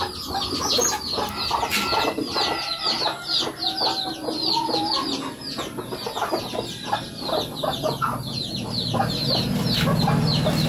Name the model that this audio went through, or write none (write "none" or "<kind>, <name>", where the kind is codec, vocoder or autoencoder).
none